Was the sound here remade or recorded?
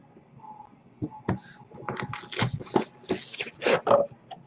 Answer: recorded